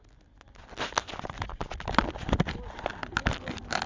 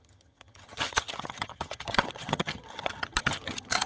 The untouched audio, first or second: first